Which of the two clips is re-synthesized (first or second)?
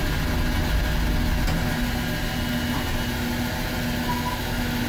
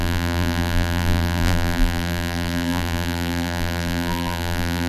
second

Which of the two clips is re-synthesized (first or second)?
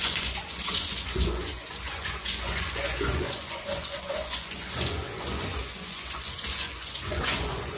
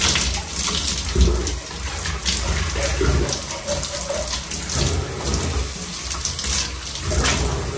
first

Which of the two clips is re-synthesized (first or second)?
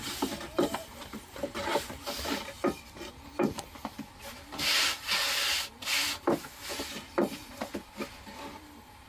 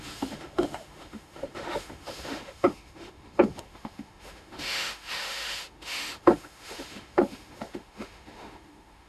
second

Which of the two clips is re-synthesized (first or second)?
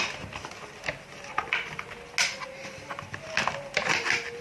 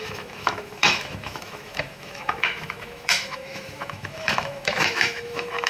second